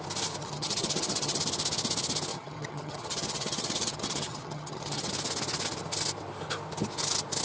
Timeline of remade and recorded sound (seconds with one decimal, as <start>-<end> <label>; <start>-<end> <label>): 0.0-0.4 recorded; 0.4-1.4 remade; 1.4-2.3 recorded; 2.3-5.1 remade; 5.1-7.4 recorded